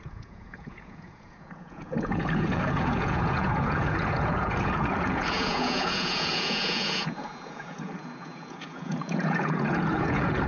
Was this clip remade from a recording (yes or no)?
yes